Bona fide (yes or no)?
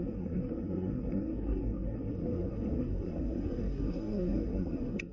no